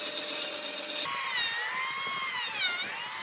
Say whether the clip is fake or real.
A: real